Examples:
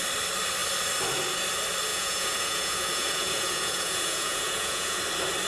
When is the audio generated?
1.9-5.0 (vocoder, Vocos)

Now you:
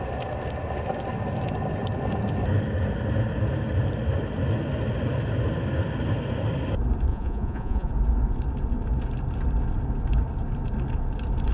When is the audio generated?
7.1-7.9 (vocoder, Vocos)

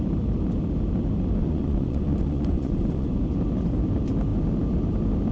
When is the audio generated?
1.4-3.2 (vocoder, Vocos)